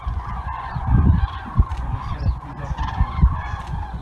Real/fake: fake